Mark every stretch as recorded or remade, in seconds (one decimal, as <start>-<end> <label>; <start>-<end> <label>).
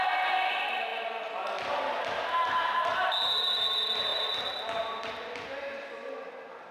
0.0-6.7 recorded